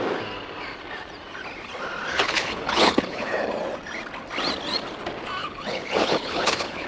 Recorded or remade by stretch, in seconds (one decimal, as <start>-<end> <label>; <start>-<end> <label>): 0.0-2.1 recorded; 2.1-3.5 remade; 3.5-5.4 recorded; 5.4-6.9 remade